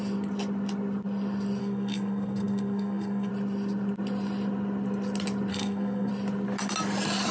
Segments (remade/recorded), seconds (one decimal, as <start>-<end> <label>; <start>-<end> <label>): 0.0-1.6 recorded; 1.6-3.3 remade; 3.3-5.5 recorded; 5.5-6.1 remade; 6.1-7.3 recorded